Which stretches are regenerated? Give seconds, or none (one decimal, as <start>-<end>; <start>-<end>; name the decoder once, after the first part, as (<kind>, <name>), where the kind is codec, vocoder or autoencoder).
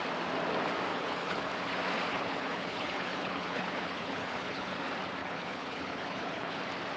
0.9-1.5 (codec, HILCodec); 2.1-4.8; 5.2-6.6